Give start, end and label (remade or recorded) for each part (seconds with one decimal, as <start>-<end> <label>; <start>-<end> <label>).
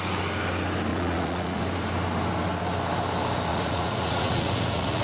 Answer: 0.0-0.9 recorded; 0.9-1.6 remade; 1.6-3.5 recorded; 3.5-5.0 remade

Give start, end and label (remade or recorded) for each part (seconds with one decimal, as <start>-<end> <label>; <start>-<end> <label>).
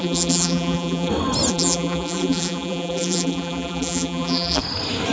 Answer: 0.0-1.1 remade; 1.1-1.5 recorded; 1.5-4.6 remade; 4.6-5.1 recorded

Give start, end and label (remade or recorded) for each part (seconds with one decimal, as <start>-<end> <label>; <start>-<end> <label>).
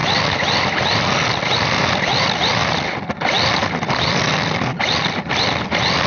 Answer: 0.0-6.1 recorded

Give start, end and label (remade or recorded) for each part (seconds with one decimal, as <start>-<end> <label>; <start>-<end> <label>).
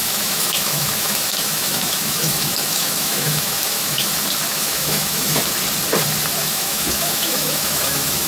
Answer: 0.0-4.1 remade; 4.1-4.5 recorded; 4.5-5.4 remade; 5.4-6.4 recorded; 6.4-8.3 remade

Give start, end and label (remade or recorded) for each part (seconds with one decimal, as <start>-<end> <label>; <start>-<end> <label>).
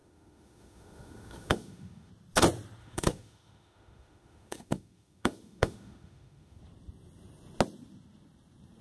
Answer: 0.0-2.1 remade; 2.1-2.8 recorded; 2.8-6.6 remade; 6.6-8.8 recorded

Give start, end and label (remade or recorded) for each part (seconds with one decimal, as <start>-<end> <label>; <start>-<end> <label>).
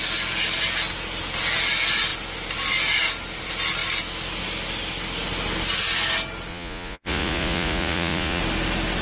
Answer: 0.0-6.5 recorded; 6.5-8.4 remade; 8.4-9.0 recorded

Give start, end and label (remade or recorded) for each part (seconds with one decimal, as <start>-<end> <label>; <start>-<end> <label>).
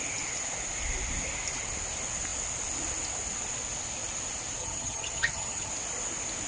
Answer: 0.0-4.6 recorded; 4.6-5.7 remade; 5.7-6.5 recorded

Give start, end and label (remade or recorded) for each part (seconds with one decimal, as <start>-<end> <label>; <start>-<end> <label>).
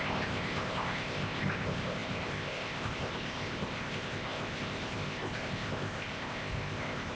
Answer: 0.0-7.2 remade